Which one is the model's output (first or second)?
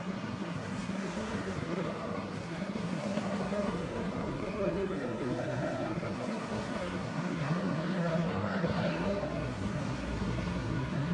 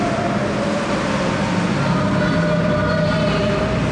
first